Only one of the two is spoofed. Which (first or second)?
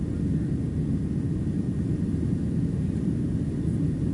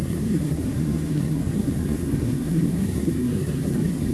second